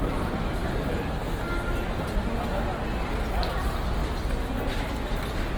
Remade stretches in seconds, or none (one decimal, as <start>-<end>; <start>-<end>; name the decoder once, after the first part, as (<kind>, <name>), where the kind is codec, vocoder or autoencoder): none